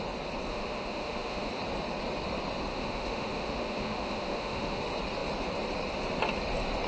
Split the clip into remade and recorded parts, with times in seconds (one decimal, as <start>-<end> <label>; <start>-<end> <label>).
0.0-0.5 recorded; 0.5-1.5 remade; 1.5-2.7 recorded; 2.7-4.8 remade; 4.8-6.9 recorded